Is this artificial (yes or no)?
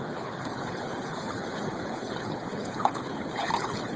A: yes